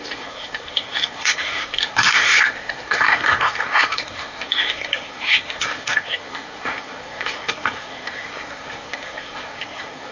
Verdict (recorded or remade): remade